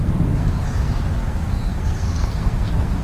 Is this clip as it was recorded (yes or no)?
no